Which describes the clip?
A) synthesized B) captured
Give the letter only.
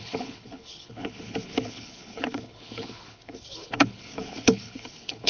A